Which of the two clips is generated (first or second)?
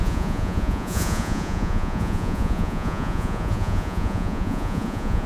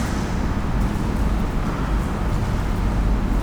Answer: first